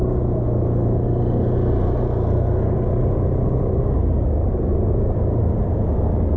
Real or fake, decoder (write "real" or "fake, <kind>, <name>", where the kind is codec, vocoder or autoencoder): real